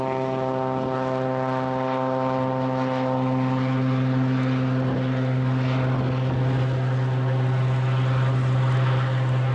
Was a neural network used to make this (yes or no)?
no